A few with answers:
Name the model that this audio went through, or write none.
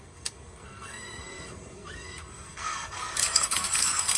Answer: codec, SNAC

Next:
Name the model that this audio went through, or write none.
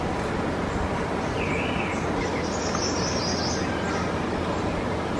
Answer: none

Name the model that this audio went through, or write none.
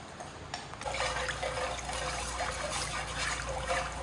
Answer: none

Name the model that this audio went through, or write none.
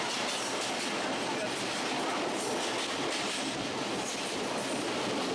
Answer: none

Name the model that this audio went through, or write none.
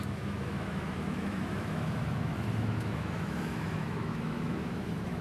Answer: autoencoder, DAC-VAE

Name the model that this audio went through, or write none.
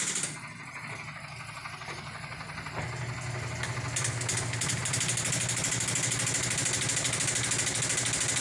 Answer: none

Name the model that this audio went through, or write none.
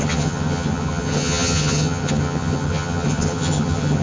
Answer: vocoder, HiFi-GAN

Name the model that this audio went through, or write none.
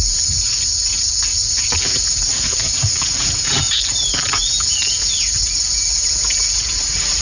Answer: none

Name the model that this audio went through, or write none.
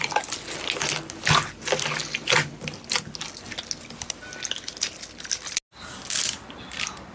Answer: none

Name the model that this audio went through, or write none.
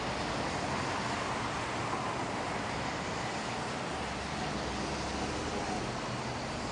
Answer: none